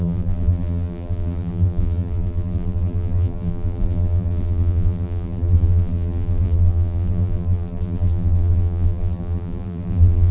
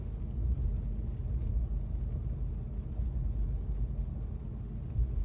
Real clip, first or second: second